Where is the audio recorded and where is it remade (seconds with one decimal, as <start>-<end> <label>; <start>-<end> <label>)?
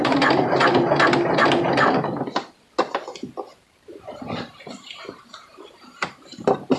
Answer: 0.0-0.7 remade; 0.7-2.9 recorded; 2.9-6.8 remade